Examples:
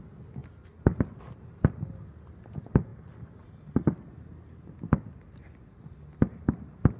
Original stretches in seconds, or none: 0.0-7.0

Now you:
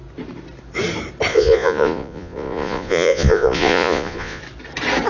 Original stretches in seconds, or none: 0.0-1.3; 4.4-5.1

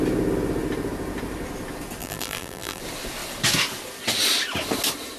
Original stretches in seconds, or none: 0.0-2.0; 2.8-5.2

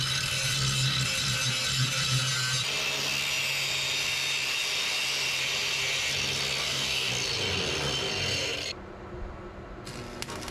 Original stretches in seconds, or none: 0.0-6.6; 7.1-10.5

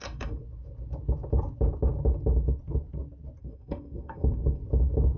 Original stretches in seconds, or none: 0.4-3.4; 4.6-5.2

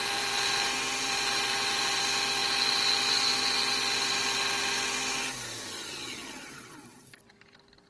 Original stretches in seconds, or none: 2.0-6.4; 7.0-7.9

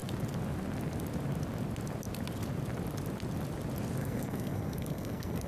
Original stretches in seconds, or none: 0.0-4.0

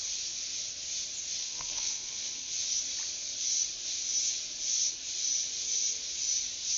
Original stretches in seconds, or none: 0.0-1.4; 2.5-6.8